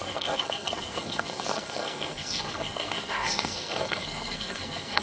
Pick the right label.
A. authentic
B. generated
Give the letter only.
B